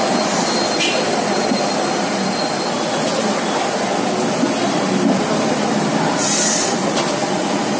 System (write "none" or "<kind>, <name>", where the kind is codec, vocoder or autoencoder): none